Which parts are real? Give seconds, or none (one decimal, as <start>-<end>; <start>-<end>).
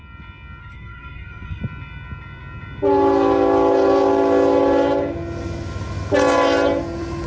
0.0-0.6; 1.6-7.3